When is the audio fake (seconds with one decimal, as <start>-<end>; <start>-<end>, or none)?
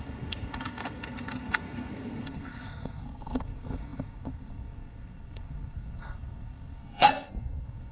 0.0-7.9